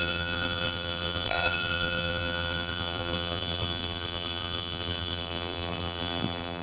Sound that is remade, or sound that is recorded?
remade